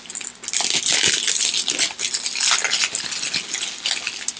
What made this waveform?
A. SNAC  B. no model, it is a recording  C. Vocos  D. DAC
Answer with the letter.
B